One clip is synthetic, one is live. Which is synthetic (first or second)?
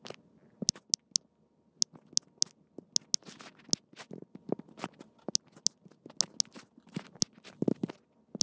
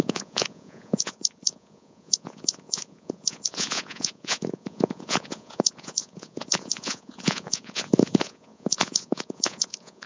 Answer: second